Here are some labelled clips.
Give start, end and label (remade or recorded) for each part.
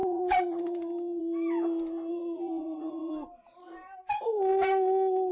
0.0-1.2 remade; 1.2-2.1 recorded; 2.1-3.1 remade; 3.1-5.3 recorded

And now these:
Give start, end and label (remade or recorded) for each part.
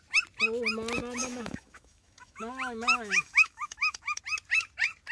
0.0-1.2 recorded; 1.2-4.2 remade; 4.2-5.1 recorded